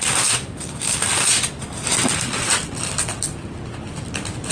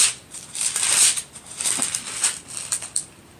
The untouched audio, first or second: first